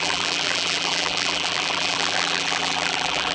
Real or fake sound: fake